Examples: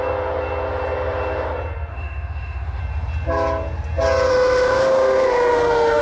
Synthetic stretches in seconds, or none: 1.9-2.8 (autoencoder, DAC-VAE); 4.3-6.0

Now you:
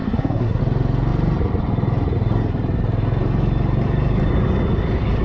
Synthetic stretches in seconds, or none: 0.0-0.6 (codec, SNAC)

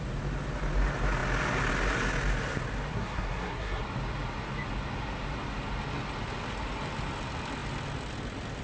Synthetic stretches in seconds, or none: 2.9-3.8 (codec, SNAC)

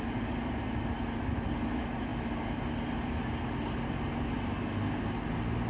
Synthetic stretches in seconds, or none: none

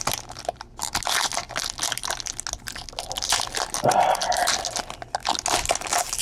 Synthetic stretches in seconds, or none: none

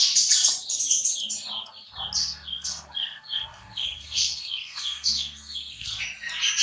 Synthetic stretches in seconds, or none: 2.2-6.0 (codec, SNAC)

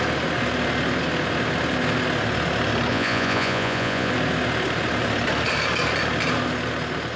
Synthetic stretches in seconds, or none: 2.9-4.1 (vocoder, Vocos)

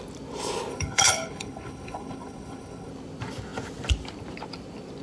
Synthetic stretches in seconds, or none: 0.7-2.9 (codec, HILCodec)